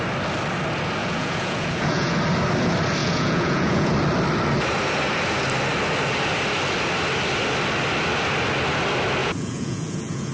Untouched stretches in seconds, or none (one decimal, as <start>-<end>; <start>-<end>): 0.0-1.0; 2.1-3.0; 3.9-9.2